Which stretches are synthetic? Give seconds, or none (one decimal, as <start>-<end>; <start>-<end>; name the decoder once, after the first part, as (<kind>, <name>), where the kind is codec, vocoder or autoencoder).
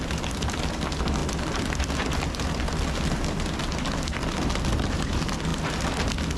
none